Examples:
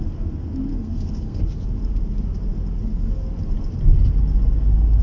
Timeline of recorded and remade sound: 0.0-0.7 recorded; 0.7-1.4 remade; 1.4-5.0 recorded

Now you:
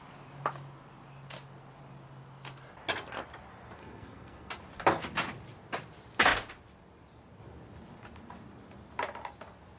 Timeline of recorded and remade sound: 0.0-3.8 recorded; 3.8-4.5 remade; 4.5-9.8 recorded

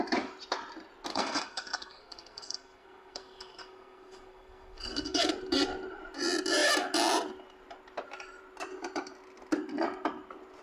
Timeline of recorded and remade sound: 0.0-1.1 recorded; 1.1-5.3 remade; 5.3-10.6 recorded

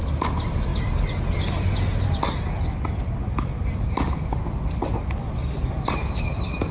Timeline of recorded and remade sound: 0.0-6.7 recorded